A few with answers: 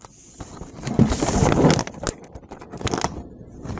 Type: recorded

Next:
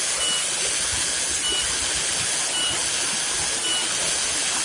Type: recorded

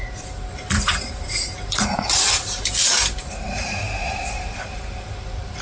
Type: remade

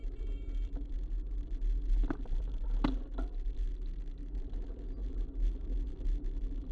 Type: recorded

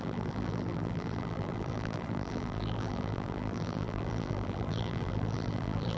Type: remade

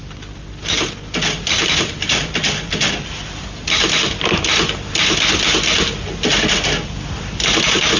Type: recorded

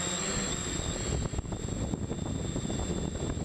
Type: recorded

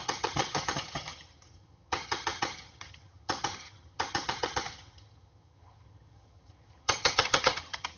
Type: remade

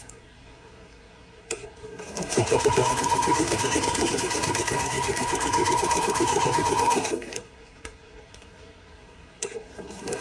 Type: remade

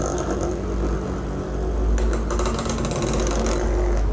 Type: recorded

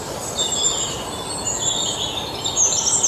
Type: recorded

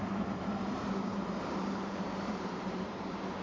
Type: remade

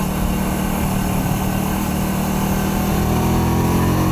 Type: recorded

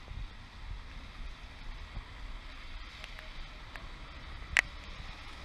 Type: recorded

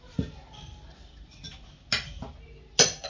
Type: recorded